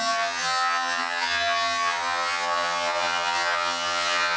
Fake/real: fake